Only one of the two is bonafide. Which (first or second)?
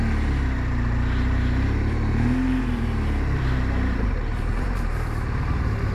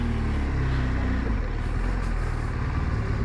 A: second